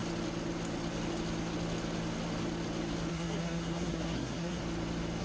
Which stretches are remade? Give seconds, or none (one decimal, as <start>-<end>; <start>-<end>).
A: 3.1-4.6